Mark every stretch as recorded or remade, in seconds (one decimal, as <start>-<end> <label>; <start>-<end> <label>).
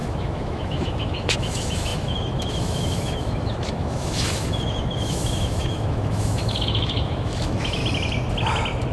0.0-7.8 remade; 7.8-8.9 recorded